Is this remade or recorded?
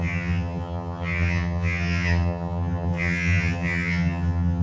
remade